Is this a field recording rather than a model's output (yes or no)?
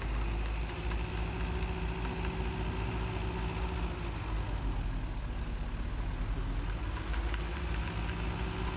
yes